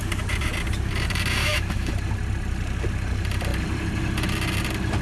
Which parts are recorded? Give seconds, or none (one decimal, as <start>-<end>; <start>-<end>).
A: 0.0-1.4; 1.9-5.0